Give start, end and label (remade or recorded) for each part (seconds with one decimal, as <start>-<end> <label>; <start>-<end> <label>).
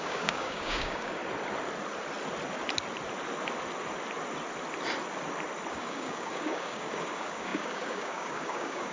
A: 0.0-1.2 remade; 1.2-5.7 recorded; 5.7-8.9 remade